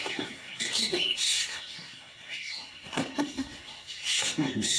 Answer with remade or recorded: remade